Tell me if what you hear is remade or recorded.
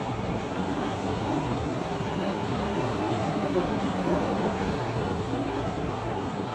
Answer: remade